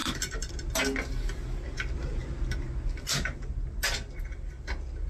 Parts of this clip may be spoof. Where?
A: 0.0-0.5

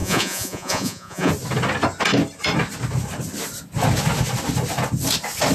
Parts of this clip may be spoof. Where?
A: 0.0-1.3

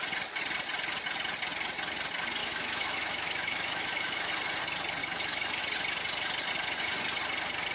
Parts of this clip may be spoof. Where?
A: 2.4-4.3; 5.0-5.6

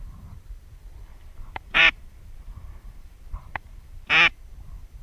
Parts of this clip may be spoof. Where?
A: 1.1-4.1

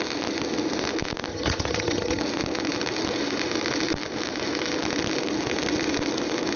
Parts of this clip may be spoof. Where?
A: 1.3-2.2

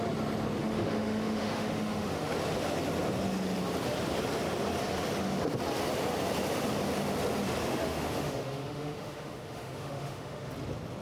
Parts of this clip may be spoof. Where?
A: 0.6-2.3; 7.6-10.5

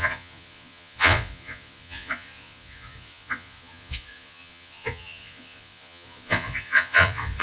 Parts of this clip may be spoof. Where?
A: 0.0-7.4

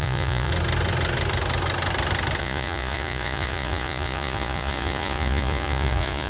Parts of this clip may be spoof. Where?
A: 0.0-0.5; 2.4-6.3